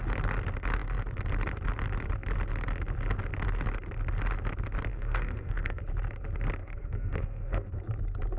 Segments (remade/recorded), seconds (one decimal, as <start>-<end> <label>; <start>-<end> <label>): 0.0-4.9 recorded; 4.9-5.8 remade; 5.8-6.6 recorded; 6.6-7.8 remade; 7.8-8.4 recorded